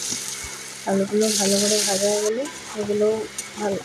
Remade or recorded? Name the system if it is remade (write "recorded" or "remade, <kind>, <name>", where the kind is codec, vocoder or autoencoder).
recorded